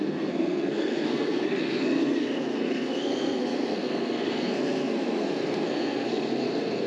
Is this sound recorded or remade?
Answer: remade